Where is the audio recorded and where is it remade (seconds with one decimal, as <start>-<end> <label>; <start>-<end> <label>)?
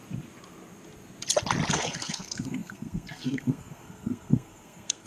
0.0-1.7 recorded; 1.7-5.1 remade